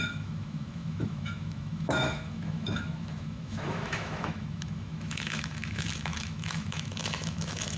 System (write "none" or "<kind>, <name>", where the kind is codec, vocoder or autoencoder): autoencoder, DAC-VAE